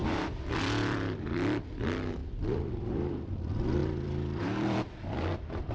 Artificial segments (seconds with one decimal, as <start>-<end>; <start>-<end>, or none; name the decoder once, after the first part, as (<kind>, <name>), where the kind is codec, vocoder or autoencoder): 0.0-5.7 (vocoder, BigVGAN v2)